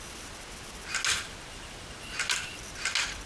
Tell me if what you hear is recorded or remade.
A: recorded